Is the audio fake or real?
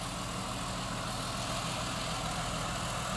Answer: real